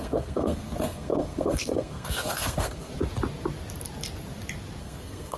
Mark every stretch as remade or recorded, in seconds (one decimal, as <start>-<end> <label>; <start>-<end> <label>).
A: 0.0-2.9 remade; 2.9-4.8 recorded; 4.8-5.4 remade